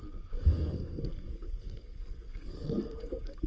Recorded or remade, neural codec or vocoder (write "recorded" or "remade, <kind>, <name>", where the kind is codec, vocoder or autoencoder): remade, codec, SNAC